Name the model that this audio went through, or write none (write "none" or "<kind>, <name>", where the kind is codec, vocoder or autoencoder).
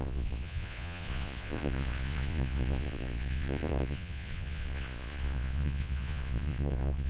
vocoder, Vocos